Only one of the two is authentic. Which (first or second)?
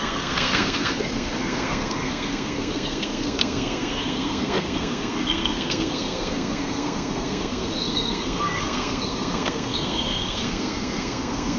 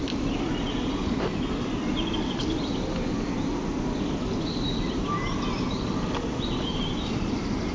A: second